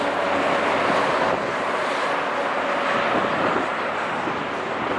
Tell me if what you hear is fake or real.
real